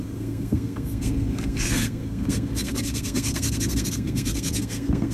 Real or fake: fake